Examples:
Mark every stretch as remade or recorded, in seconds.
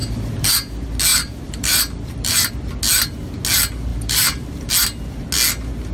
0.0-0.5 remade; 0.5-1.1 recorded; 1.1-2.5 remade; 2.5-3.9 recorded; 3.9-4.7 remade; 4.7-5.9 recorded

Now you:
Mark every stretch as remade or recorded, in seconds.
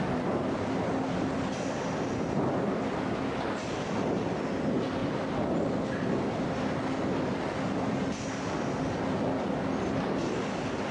0.0-10.9 recorded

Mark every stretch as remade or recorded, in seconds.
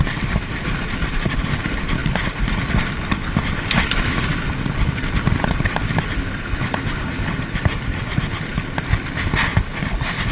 0.0-10.3 recorded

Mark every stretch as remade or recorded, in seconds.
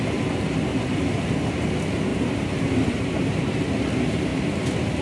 0.0-0.7 recorded; 0.7-1.7 remade; 1.7-2.1 recorded; 2.1-3.6 remade; 3.6-5.0 recorded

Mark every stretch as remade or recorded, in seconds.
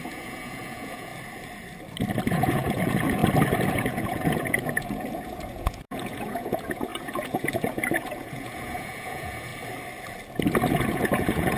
0.0-1.1 remade; 1.1-2.3 recorded; 2.3-3.2 remade; 3.2-3.7 recorded; 3.7-9.5 remade; 9.5-10.7 recorded; 10.7-11.6 remade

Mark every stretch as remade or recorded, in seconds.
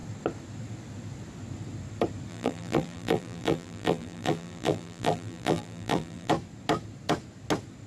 0.0-2.3 recorded; 2.3-6.3 remade; 6.3-7.9 recorded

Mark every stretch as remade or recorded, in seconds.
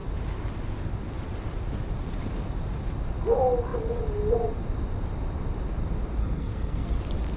0.0-6.2 recorded; 6.2-7.0 remade; 7.0-7.4 recorded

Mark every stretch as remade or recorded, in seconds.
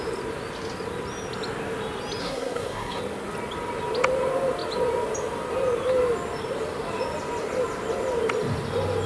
0.0-2.2 recorded; 2.2-3.0 remade; 3.0-9.1 recorded